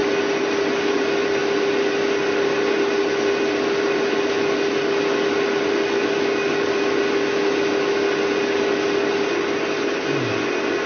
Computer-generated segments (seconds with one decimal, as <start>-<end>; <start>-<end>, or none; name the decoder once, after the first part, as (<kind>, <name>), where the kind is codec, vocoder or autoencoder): none